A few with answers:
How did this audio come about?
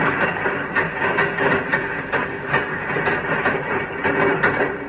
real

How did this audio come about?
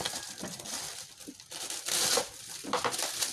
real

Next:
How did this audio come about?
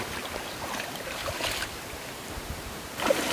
fake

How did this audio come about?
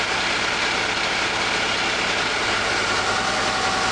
real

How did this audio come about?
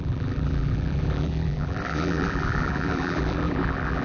fake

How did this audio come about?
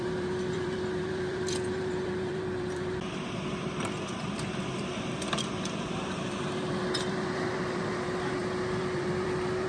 fake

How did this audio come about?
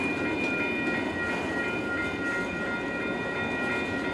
real